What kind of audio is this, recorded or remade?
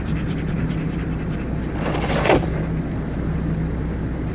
remade